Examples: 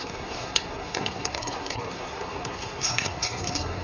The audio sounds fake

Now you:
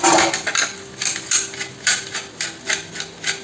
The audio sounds real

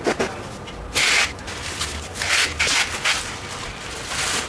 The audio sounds real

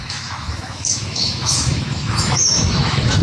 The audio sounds fake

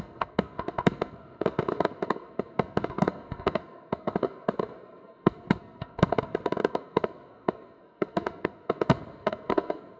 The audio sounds fake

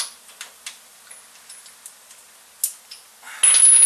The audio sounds real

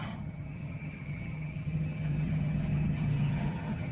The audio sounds fake